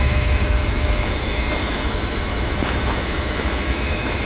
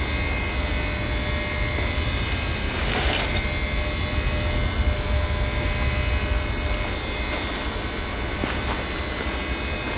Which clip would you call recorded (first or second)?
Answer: second